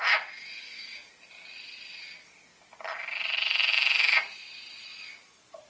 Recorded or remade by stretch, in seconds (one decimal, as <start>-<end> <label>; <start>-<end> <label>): 0.0-0.6 recorded; 0.6-1.1 remade; 1.1-5.7 recorded